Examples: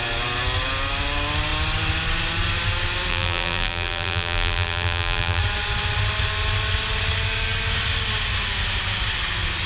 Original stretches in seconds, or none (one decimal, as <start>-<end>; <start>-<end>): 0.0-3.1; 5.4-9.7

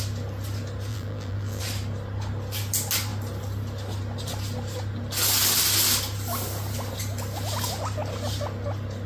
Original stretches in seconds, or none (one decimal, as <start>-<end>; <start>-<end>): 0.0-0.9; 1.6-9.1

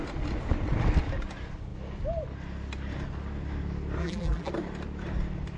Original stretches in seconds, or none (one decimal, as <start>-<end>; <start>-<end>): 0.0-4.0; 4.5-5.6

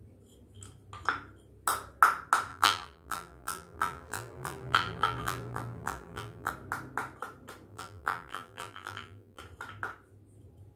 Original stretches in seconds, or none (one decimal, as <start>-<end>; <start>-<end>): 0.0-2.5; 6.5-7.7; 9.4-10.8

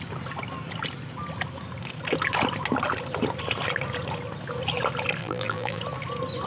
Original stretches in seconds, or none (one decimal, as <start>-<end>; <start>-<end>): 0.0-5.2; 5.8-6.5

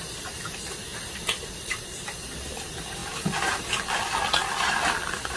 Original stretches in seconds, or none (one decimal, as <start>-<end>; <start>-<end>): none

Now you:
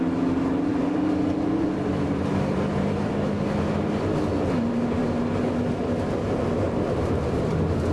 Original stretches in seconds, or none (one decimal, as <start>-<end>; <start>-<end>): 0.0-0.7; 3.1-7.9

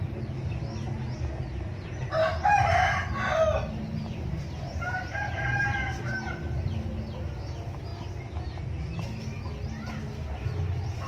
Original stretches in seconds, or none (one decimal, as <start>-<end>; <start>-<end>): 0.0-2.2; 2.7-4.3; 5.6-11.1